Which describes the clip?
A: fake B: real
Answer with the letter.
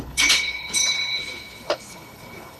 A